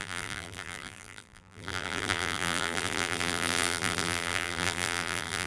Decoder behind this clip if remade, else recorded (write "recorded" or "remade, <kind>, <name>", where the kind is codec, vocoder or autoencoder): remade, vocoder, BigVGAN v2